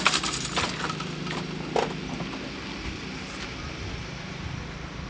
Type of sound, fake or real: real